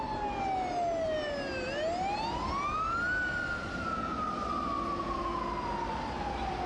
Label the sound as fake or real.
real